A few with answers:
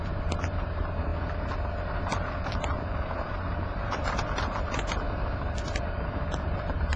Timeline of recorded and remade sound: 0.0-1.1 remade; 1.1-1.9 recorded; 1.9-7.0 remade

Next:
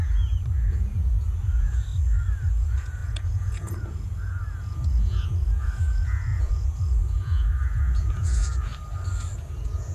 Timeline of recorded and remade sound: 0.0-1.9 remade; 1.9-2.5 recorded; 2.5-8.7 remade; 8.7-9.4 recorded; 9.4-9.9 remade

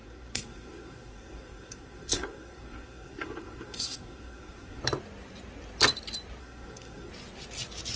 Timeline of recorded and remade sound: 0.0-4.8 remade; 4.8-6.4 recorded; 6.4-7.1 remade; 7.1-8.0 recorded

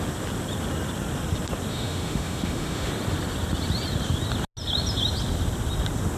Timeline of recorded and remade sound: 0.0-1.7 recorded; 1.7-2.9 remade; 2.9-6.2 recorded

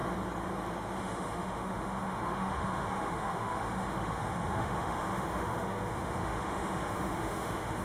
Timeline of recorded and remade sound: 0.0-1.0 recorded; 1.0-7.8 remade

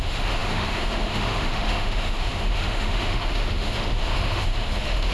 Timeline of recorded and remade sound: 0.0-5.1 remade